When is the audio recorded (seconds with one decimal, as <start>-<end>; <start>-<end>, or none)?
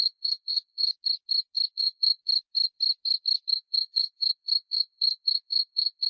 0.9-1.7; 2.2-3.5